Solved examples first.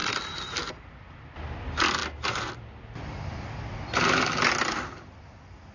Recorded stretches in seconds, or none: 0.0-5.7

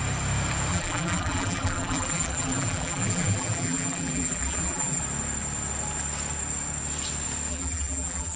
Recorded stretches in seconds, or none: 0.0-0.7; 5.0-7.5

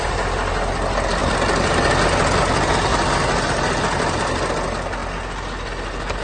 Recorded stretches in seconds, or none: 0.0-6.2